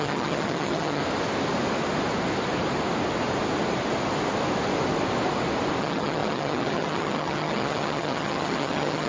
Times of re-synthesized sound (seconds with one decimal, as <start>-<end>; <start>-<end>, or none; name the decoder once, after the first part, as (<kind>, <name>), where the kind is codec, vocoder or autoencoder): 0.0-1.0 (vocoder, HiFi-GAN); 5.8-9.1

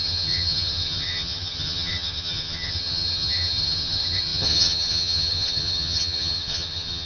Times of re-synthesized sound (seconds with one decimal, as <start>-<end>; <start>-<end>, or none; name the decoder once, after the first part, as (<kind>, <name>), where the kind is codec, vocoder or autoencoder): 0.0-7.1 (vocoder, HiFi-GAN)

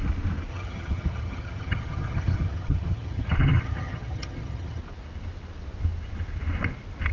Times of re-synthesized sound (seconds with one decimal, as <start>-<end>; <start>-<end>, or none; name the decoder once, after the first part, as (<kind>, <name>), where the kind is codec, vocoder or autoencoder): 0.5-4.8 (vocoder, HiFi-GAN)

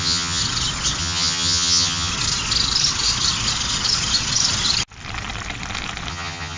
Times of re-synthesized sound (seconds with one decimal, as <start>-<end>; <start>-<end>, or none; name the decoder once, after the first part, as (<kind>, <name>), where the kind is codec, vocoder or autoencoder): 0.0-0.4 (vocoder, HiFi-GAN); 1.0-2.1; 6.1-6.6

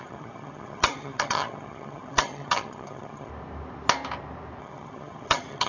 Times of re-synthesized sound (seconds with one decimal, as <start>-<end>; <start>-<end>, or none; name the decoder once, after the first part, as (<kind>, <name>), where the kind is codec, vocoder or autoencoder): 0.0-3.3 (vocoder, HiFi-GAN); 4.6-5.7